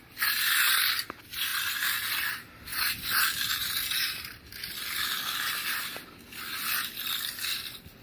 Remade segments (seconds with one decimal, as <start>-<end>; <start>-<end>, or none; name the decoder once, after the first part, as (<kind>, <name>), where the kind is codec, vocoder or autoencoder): 2.7-4.4 (vocoder, BigVGAN v2)